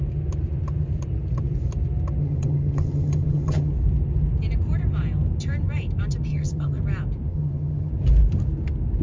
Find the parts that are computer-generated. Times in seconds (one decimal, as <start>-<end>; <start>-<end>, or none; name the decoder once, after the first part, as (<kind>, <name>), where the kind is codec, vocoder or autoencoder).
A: 2.2-3.7 (vocoder, HiFi-GAN); 6.3-6.8; 7.3-7.9